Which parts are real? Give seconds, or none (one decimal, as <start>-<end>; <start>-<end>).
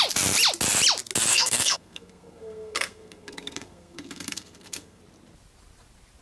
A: 0.0-1.3; 5.0-6.2